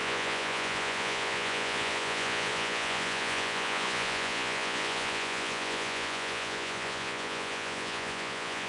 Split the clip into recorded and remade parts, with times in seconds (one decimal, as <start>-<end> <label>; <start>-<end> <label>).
0.0-8.7 remade